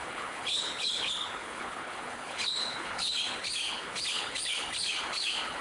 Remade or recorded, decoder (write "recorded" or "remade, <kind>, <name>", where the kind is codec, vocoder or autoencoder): remade, codec, HILCodec